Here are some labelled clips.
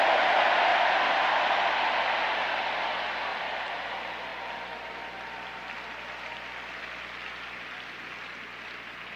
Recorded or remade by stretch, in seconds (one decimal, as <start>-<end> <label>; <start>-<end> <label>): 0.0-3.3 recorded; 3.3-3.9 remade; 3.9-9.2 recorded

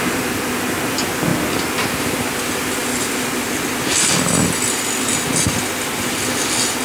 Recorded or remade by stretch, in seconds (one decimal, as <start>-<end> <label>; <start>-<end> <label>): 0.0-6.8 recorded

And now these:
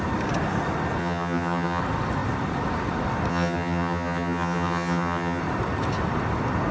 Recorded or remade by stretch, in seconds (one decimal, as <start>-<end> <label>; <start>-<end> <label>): 0.0-1.0 recorded; 1.0-1.8 remade; 1.8-3.3 recorded; 3.3-5.4 remade; 5.4-6.7 recorded